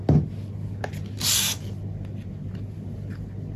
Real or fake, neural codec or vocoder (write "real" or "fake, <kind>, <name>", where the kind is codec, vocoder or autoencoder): real